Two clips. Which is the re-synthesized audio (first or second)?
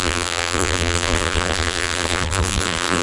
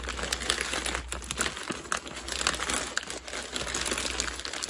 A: first